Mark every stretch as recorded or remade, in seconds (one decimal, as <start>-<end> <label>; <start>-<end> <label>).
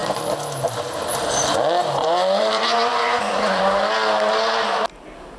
0.0-2.0 recorded; 2.0-3.6 remade; 3.6-5.4 recorded